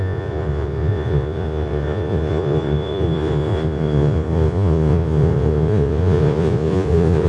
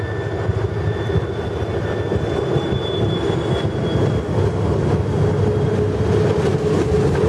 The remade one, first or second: first